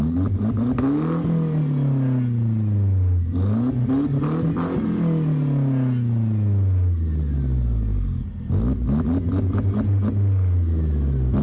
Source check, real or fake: real